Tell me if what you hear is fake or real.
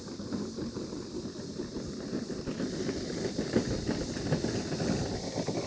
real